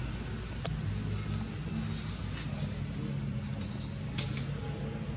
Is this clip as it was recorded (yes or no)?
yes